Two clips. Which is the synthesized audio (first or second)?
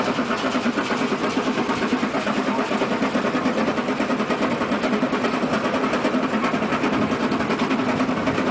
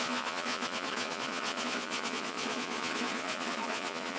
second